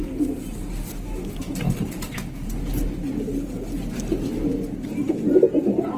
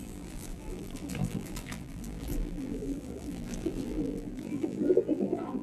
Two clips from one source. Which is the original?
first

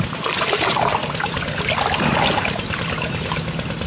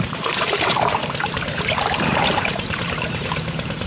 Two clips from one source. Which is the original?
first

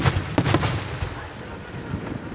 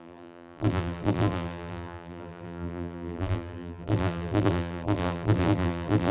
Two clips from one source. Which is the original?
first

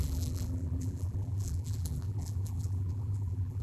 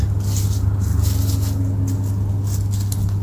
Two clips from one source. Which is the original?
second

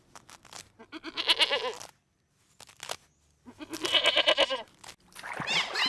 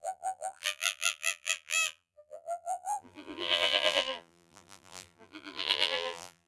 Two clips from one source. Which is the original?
first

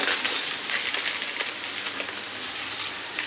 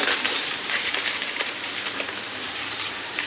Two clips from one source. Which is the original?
first